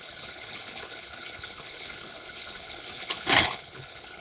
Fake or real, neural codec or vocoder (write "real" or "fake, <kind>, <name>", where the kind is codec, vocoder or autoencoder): fake, codec, HILCodec